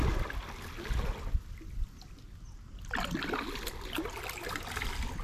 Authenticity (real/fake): real